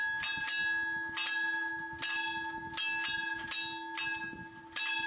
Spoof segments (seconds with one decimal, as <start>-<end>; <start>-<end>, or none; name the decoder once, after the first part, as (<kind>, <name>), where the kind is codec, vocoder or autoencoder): none